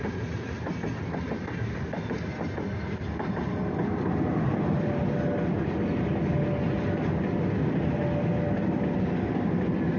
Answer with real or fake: real